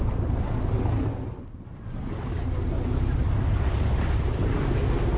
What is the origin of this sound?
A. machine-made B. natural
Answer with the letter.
B